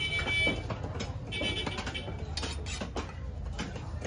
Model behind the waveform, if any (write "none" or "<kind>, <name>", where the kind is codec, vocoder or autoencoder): none